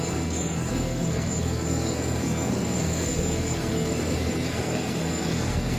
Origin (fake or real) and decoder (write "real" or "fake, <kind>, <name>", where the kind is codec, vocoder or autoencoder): fake, codec, SNAC